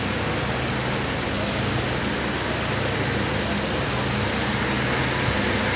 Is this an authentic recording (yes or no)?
yes